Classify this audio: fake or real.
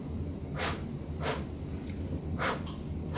fake